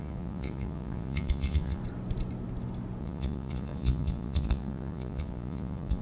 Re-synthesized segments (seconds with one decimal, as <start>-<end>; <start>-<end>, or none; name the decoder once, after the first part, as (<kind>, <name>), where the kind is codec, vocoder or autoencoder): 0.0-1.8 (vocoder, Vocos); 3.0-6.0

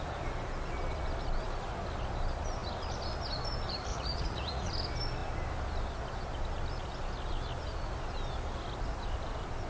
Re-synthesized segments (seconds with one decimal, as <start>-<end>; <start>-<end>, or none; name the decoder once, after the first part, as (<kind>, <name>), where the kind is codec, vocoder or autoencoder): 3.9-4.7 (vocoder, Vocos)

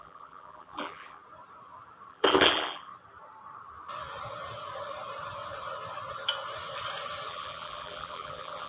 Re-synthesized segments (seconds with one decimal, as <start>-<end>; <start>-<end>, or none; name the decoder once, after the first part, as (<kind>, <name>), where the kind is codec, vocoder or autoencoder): 0.0-1.2 (vocoder, BigVGAN v2); 2.1-2.9; 7.3-8.7

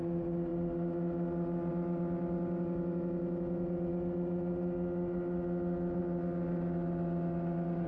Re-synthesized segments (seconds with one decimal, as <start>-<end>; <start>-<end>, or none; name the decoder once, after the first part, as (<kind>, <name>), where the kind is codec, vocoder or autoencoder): none

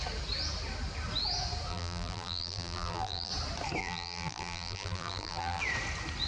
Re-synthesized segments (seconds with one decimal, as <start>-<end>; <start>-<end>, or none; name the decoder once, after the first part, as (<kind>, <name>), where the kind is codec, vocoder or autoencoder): 1.7-3.3 (vocoder, BigVGAN v2); 3.8-5.6